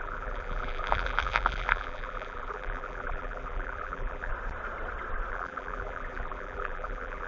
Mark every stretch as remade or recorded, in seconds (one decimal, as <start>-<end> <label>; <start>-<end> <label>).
0.0-4.3 remade; 4.3-5.3 recorded; 5.3-7.3 remade